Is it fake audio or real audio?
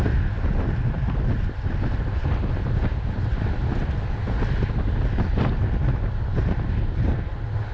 real